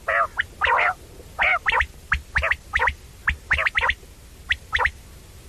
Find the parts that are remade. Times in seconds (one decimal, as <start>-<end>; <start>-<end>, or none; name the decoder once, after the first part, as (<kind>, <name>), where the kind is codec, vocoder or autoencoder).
none